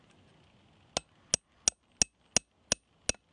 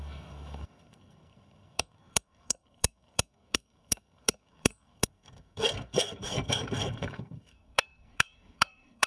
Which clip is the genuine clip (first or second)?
first